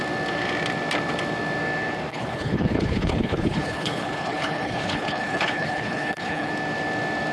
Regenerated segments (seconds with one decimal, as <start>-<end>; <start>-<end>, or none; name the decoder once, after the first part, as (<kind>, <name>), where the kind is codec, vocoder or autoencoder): 2.1-6.5 (codec, HILCodec)